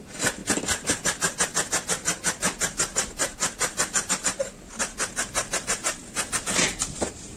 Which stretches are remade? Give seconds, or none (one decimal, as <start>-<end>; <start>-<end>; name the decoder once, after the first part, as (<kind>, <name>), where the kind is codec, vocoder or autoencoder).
0.0-0.4 (vocoder, BigVGAN v2); 4.8-6.0; 7.0-7.4